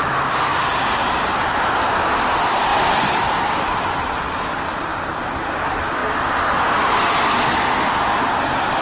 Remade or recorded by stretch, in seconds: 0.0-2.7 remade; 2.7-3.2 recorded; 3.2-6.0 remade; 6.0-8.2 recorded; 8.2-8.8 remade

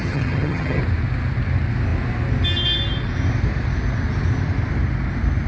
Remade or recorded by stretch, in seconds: 0.0-0.8 remade; 0.8-5.5 recorded

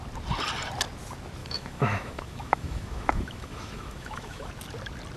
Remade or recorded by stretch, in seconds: 0.0-1.4 recorded; 1.4-4.5 remade; 4.5-5.2 recorded